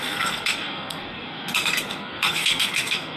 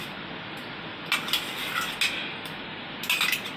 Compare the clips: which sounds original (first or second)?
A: second